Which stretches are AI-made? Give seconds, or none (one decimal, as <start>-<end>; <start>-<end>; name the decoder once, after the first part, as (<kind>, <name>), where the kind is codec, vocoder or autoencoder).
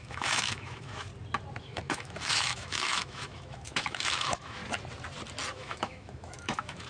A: 0.0-1.1 (autoencoder, DAC-VAE); 1.6-4.6; 5.5-6.9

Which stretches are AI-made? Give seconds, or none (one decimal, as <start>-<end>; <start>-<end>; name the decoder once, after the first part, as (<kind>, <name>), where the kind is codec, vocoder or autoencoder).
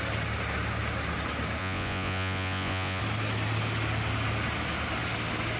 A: 1.6-3.0 (vocoder, Vocos)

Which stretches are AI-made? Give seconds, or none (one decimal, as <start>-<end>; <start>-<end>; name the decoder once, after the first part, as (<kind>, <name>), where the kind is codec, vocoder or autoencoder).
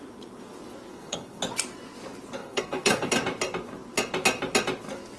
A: 0.9-1.4 (codec, SNAC); 2.4-3.1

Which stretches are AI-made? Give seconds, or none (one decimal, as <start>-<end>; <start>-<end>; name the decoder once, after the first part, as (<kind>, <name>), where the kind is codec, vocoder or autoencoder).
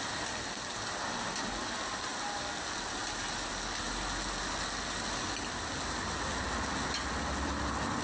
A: none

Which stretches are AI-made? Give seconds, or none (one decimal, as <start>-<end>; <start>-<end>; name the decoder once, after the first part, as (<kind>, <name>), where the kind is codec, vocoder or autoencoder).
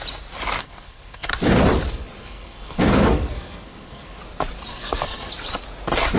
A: 0.6-1.3 (codec, SNAC); 2.2-4.2; 4.7-5.3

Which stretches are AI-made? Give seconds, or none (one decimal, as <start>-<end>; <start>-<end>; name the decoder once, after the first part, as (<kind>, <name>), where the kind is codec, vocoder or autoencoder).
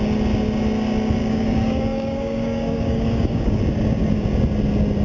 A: 1.2-3.6 (codec, DAC)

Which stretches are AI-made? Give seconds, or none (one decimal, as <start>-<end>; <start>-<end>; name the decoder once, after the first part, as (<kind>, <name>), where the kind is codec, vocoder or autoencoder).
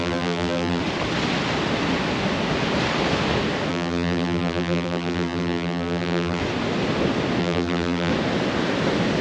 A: 0.0-0.8 (vocoder, BigVGAN v2); 3.7-6.4; 7.4-8.1